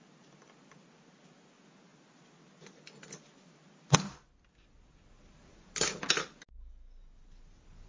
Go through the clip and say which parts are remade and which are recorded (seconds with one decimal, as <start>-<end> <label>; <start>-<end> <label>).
0.0-7.9 recorded